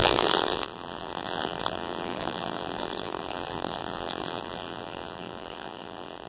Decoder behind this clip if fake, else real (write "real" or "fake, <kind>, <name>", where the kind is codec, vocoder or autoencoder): fake, vocoder, BigVGAN v2